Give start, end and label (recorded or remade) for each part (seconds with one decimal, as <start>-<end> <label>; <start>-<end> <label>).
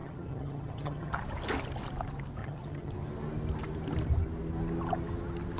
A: 0.0-1.2 remade; 1.2-2.4 recorded; 2.4-2.9 remade; 2.9-5.6 recorded